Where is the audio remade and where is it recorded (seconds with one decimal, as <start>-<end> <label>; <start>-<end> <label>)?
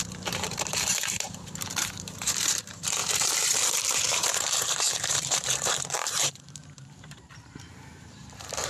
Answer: 0.0-8.7 remade